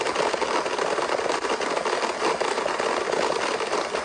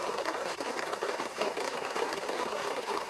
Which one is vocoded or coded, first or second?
second